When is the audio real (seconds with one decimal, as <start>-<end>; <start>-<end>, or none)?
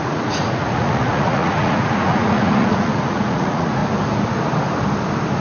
3.8-5.4